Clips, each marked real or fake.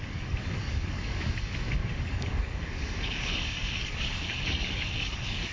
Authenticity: fake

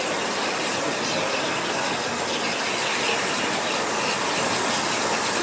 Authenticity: real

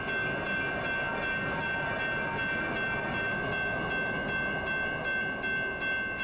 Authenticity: real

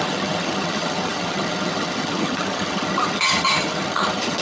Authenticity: fake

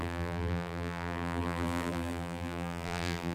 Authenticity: fake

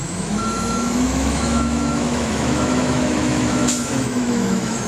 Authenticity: fake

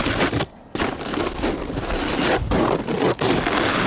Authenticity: real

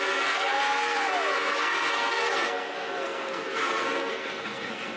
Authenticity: fake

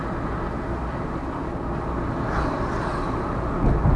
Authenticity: real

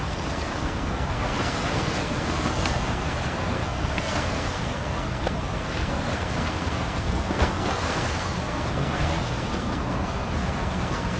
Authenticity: fake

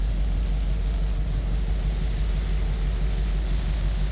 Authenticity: real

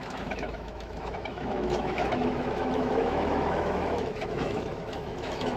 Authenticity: fake